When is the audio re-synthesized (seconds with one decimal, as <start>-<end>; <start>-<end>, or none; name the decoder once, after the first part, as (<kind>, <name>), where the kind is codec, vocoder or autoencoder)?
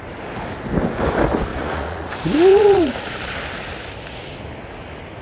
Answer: 1.5-2.1 (vocoder, Vocos); 2.5-3.2